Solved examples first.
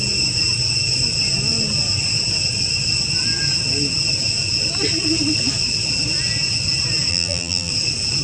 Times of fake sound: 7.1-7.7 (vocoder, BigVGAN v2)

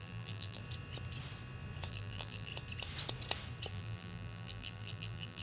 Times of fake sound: 0.0-0.6 (vocoder, BigVGAN v2); 1.9-2.5; 3.7-5.4

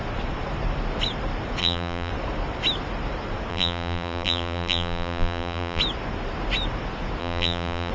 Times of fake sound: 1.6-2.1 (vocoder, BigVGAN v2); 3.5-5.8; 7.2-7.9

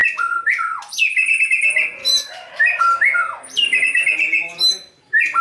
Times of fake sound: 2.0-2.8 (vocoder, BigVGAN v2); 3.2-3.8

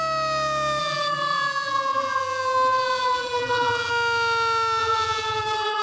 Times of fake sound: 0.8-3.9 (vocoder, BigVGAN v2); 4.8-5.8

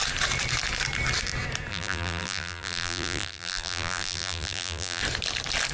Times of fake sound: 1.7-5.0 (vocoder, BigVGAN v2)

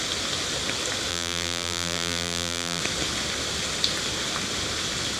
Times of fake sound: 1.1-2.8 (vocoder, BigVGAN v2)

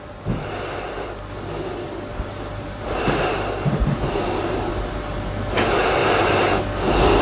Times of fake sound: 2.1-4.6 (vocoder, BigVGAN v2)